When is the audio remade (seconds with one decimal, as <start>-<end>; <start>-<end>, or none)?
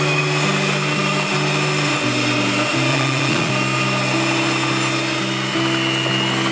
2.9-3.5